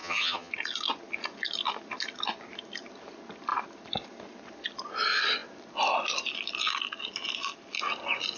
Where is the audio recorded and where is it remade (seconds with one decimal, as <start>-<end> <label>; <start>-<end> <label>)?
0.0-0.5 remade; 0.5-8.4 recorded